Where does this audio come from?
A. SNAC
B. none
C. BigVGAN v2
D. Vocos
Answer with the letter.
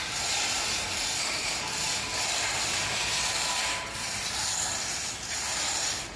C